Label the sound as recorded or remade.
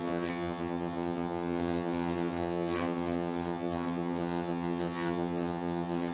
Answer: remade